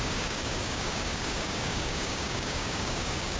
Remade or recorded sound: remade